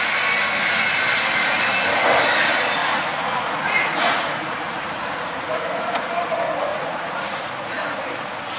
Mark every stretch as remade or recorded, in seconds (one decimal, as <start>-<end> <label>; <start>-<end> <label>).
0.0-2.8 recorded; 2.8-6.1 remade; 6.1-6.7 recorded; 6.7-8.1 remade; 8.1-8.6 recorded